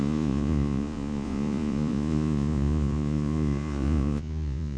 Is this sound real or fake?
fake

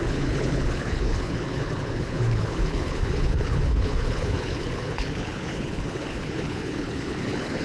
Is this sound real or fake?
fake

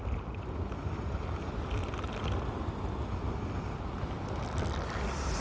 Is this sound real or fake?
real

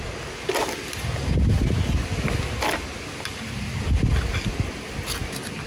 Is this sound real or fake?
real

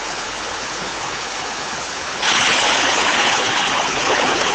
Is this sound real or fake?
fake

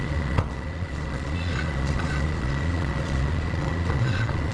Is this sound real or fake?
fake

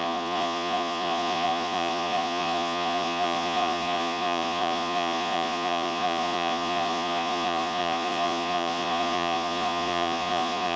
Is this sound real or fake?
fake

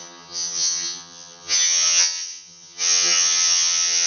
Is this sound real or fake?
fake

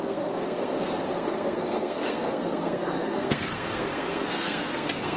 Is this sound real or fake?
fake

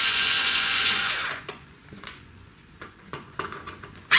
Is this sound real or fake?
fake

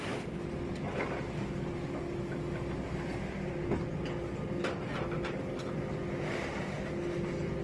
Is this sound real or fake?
real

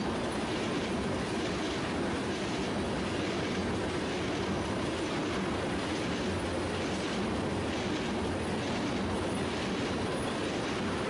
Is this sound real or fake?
real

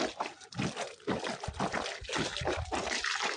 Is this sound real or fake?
real